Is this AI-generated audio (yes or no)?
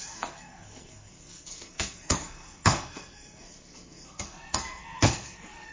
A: yes